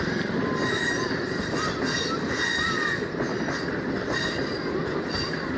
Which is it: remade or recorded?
recorded